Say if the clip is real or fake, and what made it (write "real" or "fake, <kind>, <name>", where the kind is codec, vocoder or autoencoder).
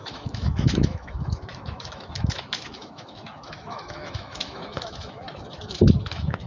fake, autoencoder, DAC-VAE